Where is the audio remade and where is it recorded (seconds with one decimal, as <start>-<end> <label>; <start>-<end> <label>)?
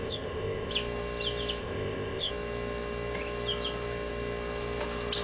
0.0-0.7 remade; 0.7-1.6 recorded; 1.6-2.3 remade; 2.3-5.2 recorded